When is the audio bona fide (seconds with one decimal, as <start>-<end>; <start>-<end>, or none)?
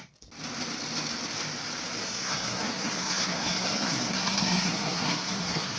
0.0-2.0